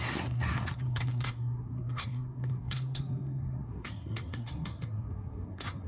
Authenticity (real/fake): fake